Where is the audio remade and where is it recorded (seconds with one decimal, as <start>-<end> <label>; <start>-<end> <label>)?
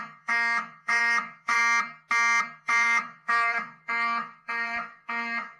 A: 0.0-1.6 remade; 1.6-2.6 recorded; 2.6-5.6 remade